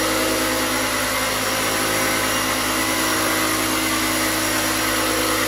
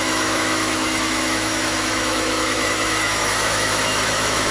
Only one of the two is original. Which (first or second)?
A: first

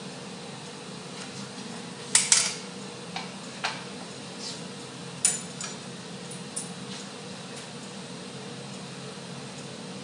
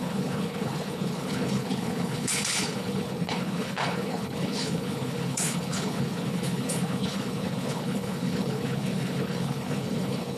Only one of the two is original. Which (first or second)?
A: first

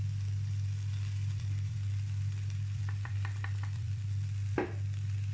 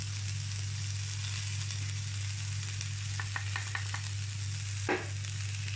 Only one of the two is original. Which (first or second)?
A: second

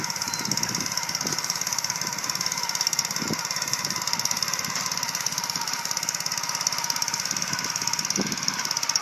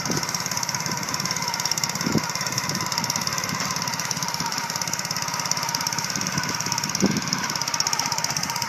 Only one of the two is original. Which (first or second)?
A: first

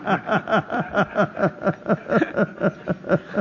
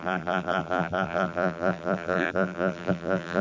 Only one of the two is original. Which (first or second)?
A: first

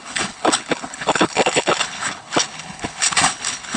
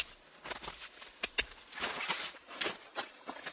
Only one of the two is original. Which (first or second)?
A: second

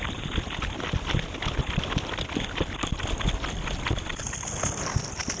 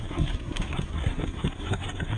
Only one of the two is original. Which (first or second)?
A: first